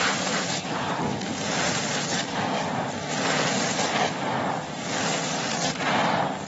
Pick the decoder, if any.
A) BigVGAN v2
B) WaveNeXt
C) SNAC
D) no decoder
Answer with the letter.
D